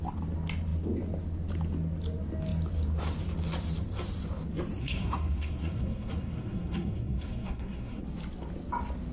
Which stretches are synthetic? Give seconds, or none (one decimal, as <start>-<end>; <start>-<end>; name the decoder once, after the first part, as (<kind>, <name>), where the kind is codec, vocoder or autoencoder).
4.8-8.0 (codec, SNAC)